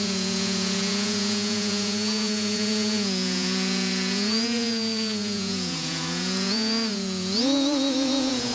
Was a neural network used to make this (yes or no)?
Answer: yes